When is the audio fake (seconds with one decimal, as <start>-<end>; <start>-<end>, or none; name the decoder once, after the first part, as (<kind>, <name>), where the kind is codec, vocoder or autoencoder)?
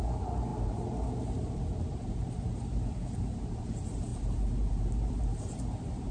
0.0-6.1 (vocoder, BigVGAN v2)